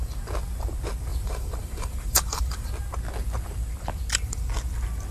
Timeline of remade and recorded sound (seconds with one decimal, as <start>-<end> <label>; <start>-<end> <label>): 0.0-1.1 recorded; 1.1-2.7 remade; 2.7-5.1 recorded